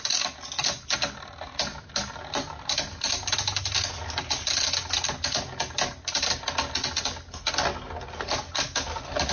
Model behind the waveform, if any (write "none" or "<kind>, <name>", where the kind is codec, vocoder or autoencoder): none